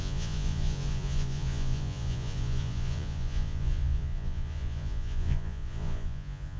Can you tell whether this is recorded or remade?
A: remade